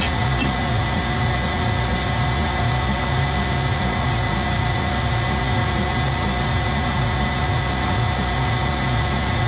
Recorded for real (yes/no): no